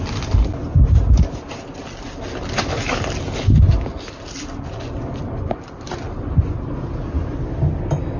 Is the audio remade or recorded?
recorded